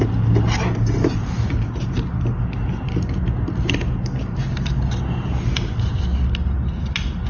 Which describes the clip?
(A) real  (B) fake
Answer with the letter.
A